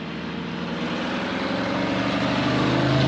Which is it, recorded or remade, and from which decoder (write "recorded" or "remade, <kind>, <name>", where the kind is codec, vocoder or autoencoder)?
recorded